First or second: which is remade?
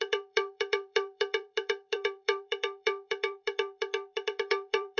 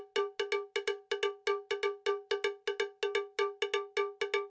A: first